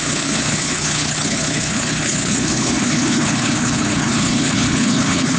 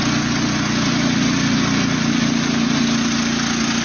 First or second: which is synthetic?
first